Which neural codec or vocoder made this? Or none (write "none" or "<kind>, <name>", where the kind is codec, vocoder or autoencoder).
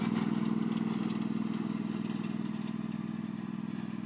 none